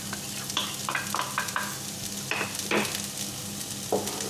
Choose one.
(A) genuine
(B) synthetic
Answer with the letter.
A